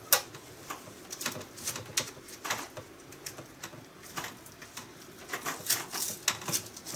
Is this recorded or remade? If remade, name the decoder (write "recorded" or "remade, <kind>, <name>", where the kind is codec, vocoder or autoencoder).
recorded